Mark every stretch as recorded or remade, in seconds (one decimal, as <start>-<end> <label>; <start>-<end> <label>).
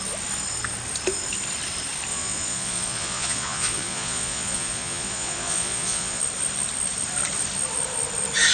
0.0-2.1 recorded; 2.1-6.2 remade; 6.2-8.5 recorded